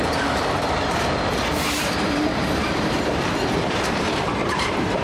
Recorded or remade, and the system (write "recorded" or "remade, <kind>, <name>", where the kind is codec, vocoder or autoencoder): remade, vocoder, BigVGAN v2